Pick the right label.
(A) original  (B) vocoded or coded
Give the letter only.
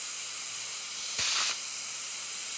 B